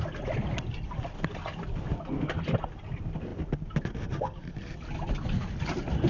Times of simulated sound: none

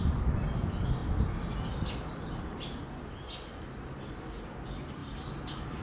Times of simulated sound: none

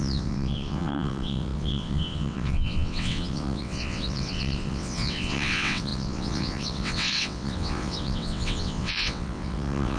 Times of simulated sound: 0.0-10.0 (vocoder, WaveNeXt)

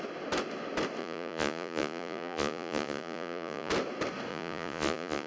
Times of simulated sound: 1.0-3.7 (vocoder, Vocos); 4.3-5.3